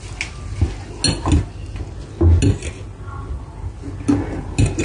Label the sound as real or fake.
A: real